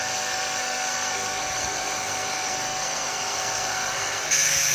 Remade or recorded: remade